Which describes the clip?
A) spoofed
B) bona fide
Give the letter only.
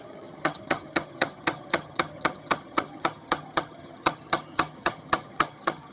A